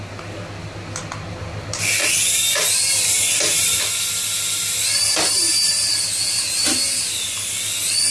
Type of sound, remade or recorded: recorded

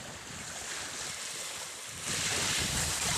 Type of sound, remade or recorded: recorded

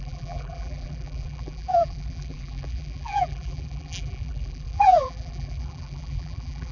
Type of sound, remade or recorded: remade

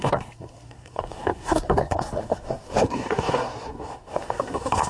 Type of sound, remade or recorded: remade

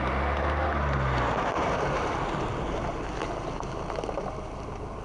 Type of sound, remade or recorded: recorded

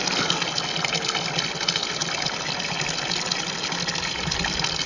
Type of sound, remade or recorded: recorded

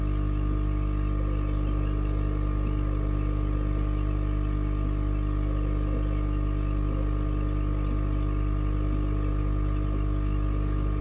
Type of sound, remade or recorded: recorded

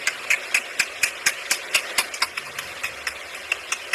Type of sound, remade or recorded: recorded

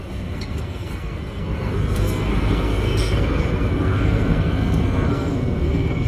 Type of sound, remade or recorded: remade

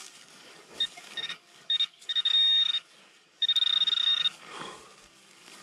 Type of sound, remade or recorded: remade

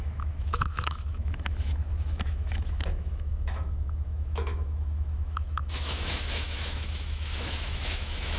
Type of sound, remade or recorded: remade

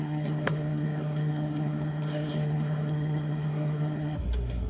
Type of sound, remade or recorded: remade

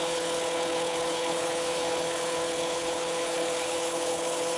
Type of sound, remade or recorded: remade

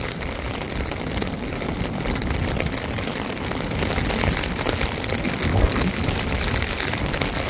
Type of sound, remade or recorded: recorded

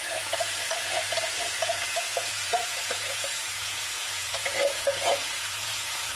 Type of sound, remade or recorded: remade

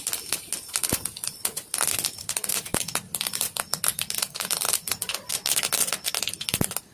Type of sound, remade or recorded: recorded